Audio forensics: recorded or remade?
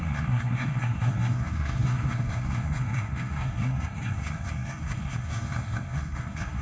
remade